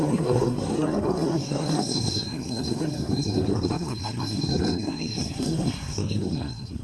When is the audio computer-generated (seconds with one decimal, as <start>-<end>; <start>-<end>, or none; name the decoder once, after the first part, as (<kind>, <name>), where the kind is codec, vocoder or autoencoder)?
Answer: 0.0-6.8 (codec, SNAC)